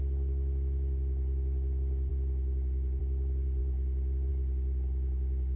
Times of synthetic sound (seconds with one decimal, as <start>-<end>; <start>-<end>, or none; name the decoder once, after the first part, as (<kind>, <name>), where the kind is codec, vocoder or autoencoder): none